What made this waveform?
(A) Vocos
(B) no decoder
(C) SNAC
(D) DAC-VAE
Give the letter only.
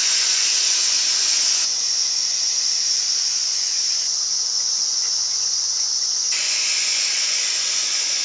A